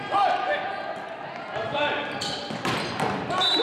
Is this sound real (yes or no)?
yes